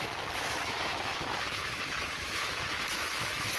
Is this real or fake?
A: fake